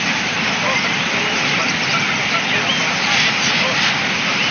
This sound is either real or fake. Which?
real